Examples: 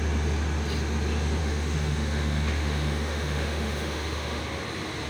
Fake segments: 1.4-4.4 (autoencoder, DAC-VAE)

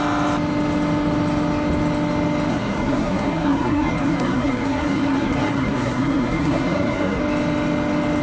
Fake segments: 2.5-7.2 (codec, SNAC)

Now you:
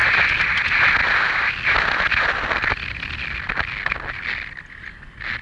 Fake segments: none

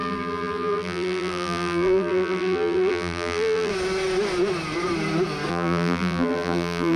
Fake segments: 0.0-3.7 (vocoder, BigVGAN v2); 5.5-7.0

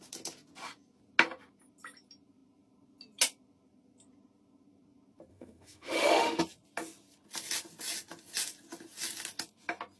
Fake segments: 5.3-6.4 (autoencoder, DAC-VAE)

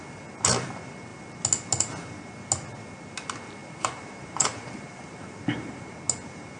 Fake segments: 3.6-6.0 (vocoder, BigVGAN v2)